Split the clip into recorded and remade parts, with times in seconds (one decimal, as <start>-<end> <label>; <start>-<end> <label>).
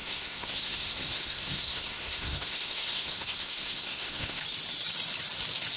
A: 0.0-4.4 remade; 4.4-5.8 recorded